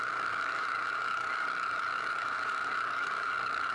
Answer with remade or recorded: remade